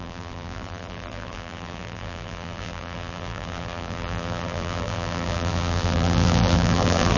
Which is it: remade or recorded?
remade